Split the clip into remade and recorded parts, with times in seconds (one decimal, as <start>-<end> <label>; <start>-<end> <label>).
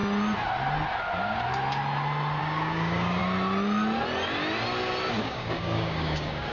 0.0-2.4 recorded; 2.4-3.2 remade; 3.2-5.2 recorded; 5.2-6.5 remade